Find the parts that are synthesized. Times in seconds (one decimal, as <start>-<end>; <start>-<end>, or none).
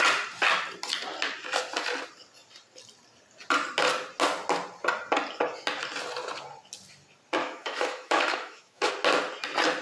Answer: 7.4-8.9